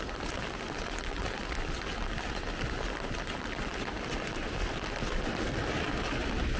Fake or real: real